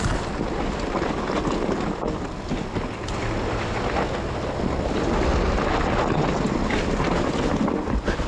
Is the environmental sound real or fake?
real